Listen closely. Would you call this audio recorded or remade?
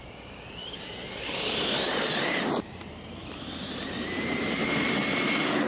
remade